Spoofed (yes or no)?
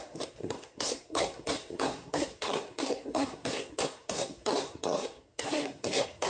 yes